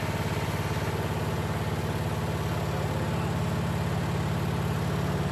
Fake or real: real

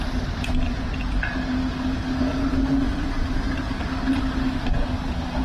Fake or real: real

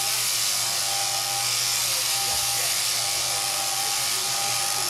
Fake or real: real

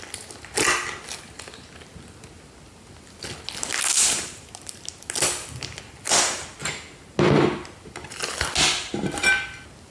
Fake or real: real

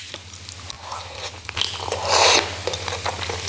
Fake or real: real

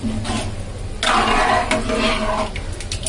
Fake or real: real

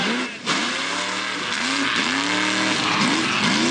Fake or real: real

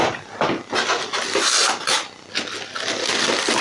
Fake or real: real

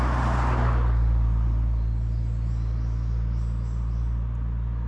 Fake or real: real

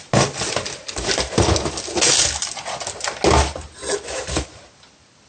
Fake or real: real